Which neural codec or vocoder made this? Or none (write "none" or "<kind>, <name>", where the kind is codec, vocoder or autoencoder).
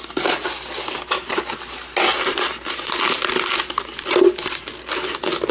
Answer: none